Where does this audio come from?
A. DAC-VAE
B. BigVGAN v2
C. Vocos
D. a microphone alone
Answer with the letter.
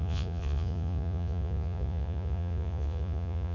C